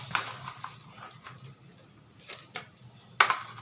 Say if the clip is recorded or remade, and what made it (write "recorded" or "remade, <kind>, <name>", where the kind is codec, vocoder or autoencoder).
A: recorded